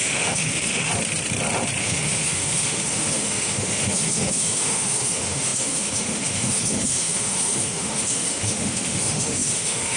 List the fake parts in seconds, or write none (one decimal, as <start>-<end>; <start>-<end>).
0.0-0.9; 1.8-10.0